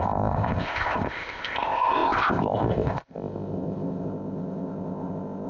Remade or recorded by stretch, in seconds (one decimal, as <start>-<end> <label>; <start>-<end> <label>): 0.0-5.5 remade